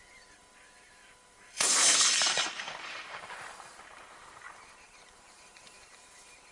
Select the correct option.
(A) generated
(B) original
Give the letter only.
A